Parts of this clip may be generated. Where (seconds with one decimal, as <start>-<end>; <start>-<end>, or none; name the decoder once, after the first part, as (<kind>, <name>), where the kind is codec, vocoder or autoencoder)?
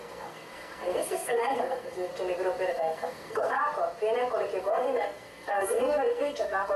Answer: 0.0-2.1 (codec, SNAC); 2.7-3.6; 4.6-6.8